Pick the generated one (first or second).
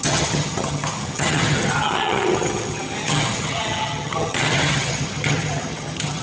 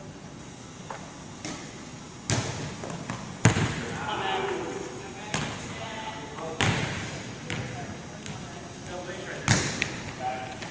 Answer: first